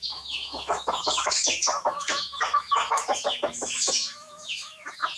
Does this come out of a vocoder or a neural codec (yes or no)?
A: yes